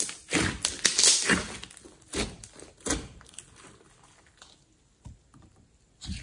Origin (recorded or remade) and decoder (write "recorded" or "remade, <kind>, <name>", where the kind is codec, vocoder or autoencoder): recorded